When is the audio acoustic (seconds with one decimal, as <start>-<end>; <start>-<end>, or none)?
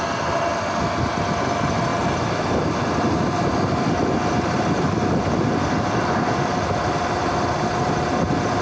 0.0-8.6